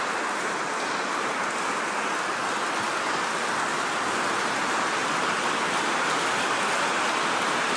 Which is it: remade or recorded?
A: recorded